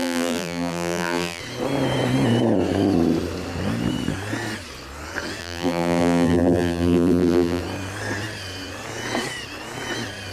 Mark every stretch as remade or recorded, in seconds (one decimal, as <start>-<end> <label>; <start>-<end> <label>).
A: 0.0-1.4 remade; 1.4-5.4 recorded; 5.4-7.6 remade; 7.6-10.3 recorded